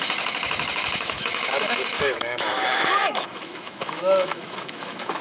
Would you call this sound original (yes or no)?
no